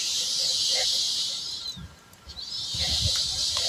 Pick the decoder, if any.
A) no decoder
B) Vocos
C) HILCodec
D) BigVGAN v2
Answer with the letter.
D